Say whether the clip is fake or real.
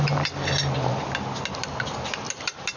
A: real